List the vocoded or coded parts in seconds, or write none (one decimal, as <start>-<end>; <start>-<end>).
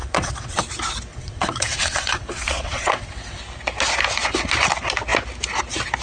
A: 0.0-0.6; 1.1-3.4